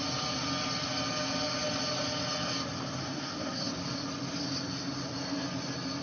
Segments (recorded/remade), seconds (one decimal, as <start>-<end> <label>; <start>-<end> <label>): 0.0-3.0 recorded; 3.0-3.7 remade; 3.7-6.0 recorded